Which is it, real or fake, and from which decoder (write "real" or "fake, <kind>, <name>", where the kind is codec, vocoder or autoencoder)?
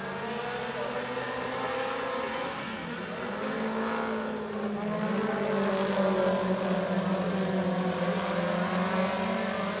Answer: real